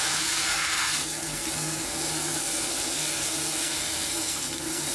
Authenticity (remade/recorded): remade